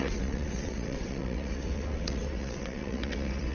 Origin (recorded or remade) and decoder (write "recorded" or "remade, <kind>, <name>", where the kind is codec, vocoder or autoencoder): remade, vocoder, WaveNeXt